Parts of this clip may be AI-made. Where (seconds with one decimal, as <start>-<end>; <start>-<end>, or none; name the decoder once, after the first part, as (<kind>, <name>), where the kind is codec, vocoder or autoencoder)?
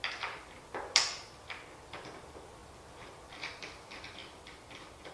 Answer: none